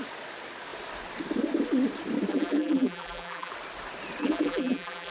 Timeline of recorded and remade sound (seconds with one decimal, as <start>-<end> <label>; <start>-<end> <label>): 0.0-2.3 recorded; 2.3-3.5 remade; 3.5-4.2 recorded; 4.2-5.1 remade